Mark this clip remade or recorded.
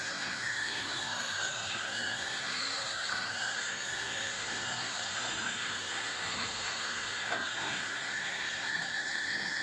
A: remade